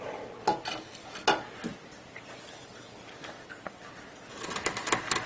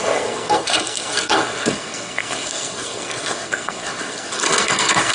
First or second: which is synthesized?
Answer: second